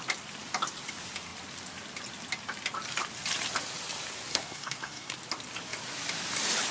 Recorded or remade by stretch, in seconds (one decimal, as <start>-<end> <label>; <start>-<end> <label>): 0.0-4.3 recorded; 4.3-5.1 remade; 5.1-6.7 recorded